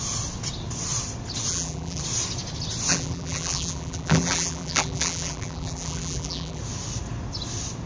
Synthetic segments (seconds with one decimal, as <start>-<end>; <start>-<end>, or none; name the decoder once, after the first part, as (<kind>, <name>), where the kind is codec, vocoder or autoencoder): 1.5-2.0 (vocoder, BigVGAN v2); 2.9-6.6